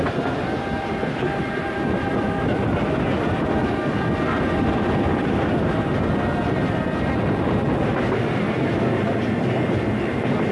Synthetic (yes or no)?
no